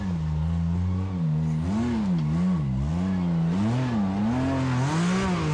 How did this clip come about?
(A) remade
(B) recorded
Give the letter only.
B